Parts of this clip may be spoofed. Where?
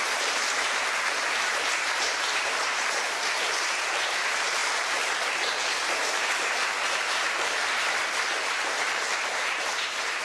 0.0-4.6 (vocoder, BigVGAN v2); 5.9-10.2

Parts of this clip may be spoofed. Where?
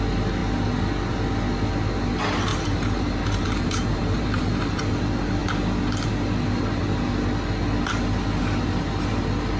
2.5-4.8 (vocoder, BigVGAN v2)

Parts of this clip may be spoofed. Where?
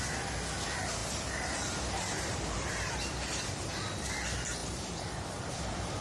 1.0-3.7 (vocoder, BigVGAN v2); 4.6-6.0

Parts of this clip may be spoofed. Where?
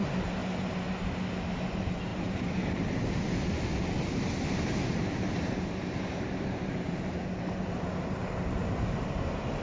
0.0-0.4 (vocoder, BigVGAN v2); 1.4-3.7; 4.5-9.6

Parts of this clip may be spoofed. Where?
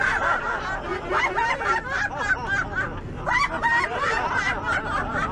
none